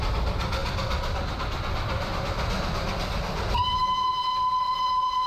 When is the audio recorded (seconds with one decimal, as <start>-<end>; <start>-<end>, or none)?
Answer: 0.0-5.3